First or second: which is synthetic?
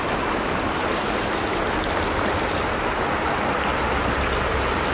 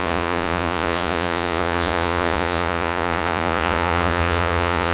second